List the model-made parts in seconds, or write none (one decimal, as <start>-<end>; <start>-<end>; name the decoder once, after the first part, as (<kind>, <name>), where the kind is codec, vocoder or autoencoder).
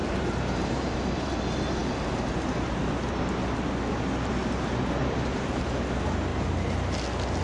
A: 0.0-1.4 (vocoder, BigVGAN v2); 5.0-5.6; 6.3-7.0